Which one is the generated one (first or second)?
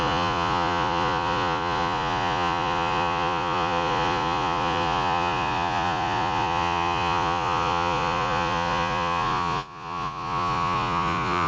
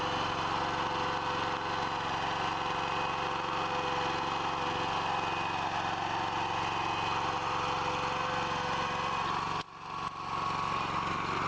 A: first